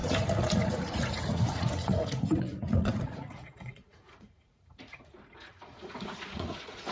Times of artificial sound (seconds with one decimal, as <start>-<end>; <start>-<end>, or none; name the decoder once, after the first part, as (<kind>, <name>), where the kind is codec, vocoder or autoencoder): 0.0-6.9 (vocoder, Vocos)

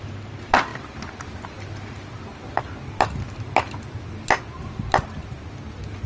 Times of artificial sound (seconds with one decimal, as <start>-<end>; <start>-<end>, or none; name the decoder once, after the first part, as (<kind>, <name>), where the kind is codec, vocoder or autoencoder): none

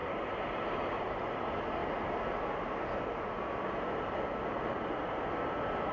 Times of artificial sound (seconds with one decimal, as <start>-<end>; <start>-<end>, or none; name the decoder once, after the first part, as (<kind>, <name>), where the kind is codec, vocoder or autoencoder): 0.0-1.1 (vocoder, BigVGAN v2)